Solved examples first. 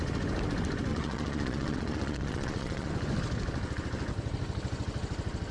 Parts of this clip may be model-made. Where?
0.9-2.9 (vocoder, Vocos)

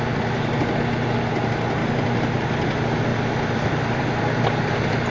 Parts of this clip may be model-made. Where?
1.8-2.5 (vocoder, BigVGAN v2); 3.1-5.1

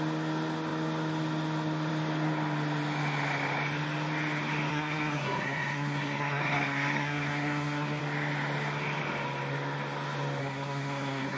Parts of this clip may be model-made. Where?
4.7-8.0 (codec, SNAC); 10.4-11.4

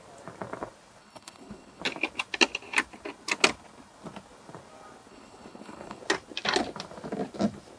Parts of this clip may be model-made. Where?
1.0-1.8 (codec, HILCodec); 5.1-6.0